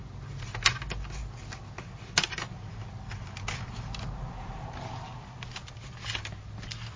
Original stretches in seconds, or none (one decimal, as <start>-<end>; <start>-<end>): 0.0-7.0